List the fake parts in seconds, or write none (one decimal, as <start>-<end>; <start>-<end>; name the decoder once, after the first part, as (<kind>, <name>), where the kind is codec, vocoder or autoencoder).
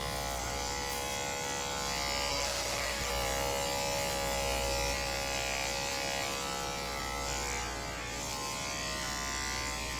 2.3-3.1 (codec, SNAC)